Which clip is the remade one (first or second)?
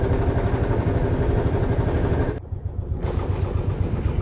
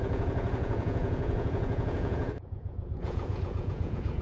second